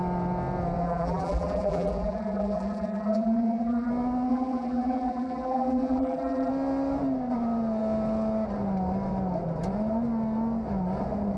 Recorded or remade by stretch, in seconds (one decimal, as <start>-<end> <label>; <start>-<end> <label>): 0.0-0.8 recorded; 0.8-3.9 remade; 3.9-4.3 recorded; 4.3-6.5 remade; 6.5-11.4 recorded